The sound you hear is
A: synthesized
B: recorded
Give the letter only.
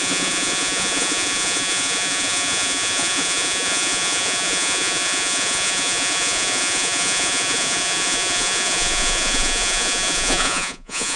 A